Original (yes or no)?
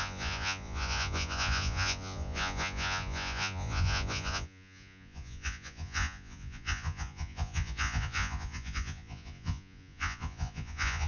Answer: no